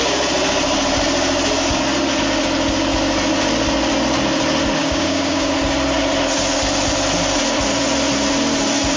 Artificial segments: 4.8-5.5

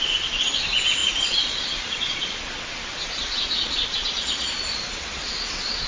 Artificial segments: 0.0-5.9